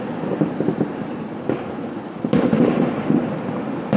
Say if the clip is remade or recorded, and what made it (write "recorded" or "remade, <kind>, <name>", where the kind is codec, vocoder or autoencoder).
recorded